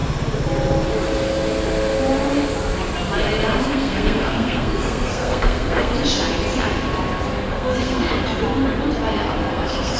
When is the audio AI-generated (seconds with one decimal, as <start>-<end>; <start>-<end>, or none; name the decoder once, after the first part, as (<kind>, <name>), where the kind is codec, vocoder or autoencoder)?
3.6-5.9 (codec, SNAC); 7.5-8.1; 9.5-10.0